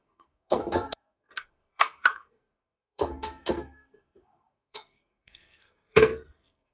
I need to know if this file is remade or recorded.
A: remade